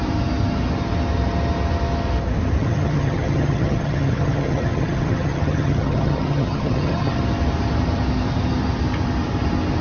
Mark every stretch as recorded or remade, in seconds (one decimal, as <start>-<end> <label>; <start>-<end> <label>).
0.0-2.6 recorded; 2.6-7.2 remade; 7.2-9.8 recorded